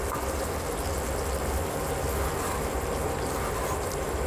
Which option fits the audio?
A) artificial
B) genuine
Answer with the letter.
B